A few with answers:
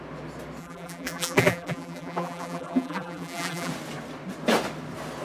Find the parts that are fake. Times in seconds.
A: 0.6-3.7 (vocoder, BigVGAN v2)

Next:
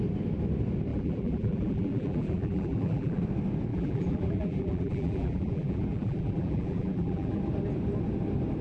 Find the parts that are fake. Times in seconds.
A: 0.9-3.2 (vocoder, BigVGAN v2); 3.7-7.4

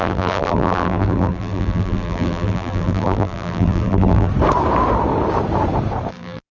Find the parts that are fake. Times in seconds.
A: 0.0-4.3 (vocoder, BigVGAN v2); 6.1-6.5

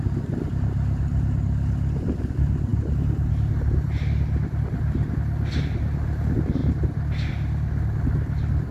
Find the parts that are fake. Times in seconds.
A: none